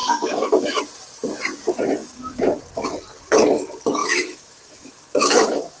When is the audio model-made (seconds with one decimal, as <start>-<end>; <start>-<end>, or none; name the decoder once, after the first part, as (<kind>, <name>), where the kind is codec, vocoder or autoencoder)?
0.0-0.8 (autoencoder, DAC-VAE); 2.0-2.6; 4.0-5.8